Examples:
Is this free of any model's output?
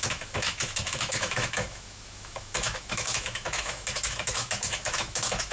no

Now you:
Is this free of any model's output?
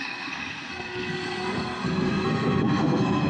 no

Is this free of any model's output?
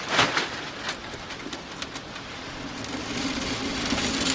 no